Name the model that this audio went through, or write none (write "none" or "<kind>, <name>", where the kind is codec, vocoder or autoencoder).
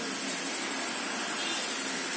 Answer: none